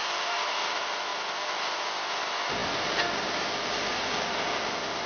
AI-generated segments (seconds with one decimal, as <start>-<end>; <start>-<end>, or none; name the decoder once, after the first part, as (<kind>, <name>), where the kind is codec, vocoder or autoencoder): none